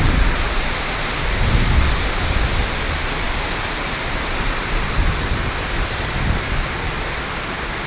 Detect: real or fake real